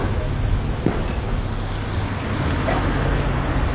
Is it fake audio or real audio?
real